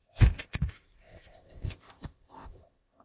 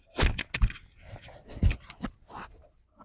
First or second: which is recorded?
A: second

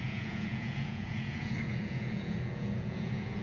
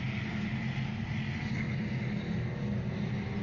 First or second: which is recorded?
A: second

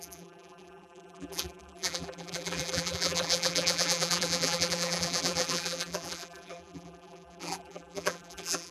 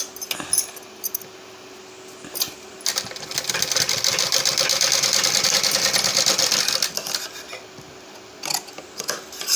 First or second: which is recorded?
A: second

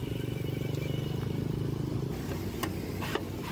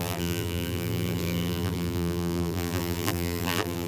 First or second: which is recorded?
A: first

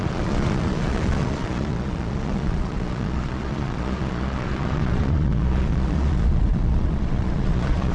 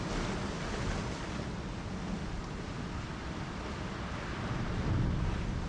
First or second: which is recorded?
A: second